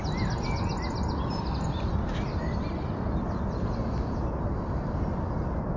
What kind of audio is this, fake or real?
real